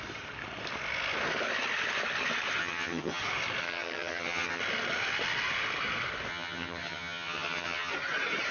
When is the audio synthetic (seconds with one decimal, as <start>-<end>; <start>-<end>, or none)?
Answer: 2.6-3.2; 3.6-4.6; 6.3-7.9